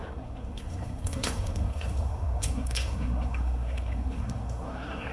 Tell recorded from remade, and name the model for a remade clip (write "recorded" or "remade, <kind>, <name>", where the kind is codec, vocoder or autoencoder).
remade, codec, SNAC